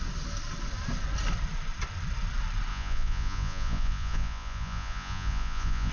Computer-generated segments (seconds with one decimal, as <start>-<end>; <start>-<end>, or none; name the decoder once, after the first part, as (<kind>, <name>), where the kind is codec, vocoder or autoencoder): 2.7-5.9 (vocoder, Vocos)